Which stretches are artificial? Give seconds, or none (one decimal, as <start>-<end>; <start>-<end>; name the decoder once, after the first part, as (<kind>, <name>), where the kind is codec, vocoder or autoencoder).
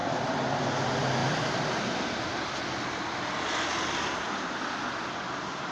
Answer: 0.0-0.6 (vocoder, BigVGAN v2); 1.2-3.1